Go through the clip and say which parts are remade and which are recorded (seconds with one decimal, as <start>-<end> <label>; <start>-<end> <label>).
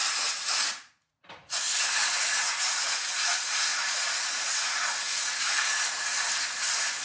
0.0-7.0 remade